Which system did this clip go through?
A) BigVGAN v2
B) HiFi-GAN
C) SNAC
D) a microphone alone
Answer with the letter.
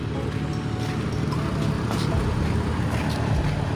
D